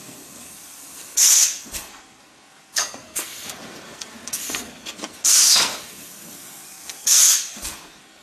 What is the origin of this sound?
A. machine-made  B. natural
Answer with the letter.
A